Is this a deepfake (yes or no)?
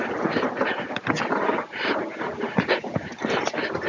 no